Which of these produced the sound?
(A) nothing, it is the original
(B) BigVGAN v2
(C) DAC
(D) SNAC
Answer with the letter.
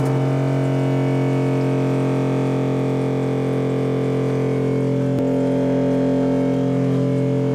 A